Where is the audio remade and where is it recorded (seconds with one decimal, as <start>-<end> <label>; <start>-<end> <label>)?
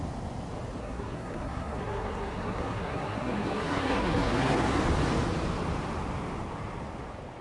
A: 0.0-0.8 recorded; 0.8-4.8 remade; 4.8-7.4 recorded